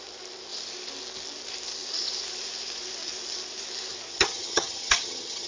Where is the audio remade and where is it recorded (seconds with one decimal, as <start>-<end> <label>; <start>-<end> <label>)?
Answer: 0.0-4.1 recorded; 4.1-5.5 remade